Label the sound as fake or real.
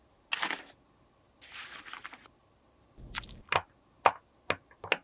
real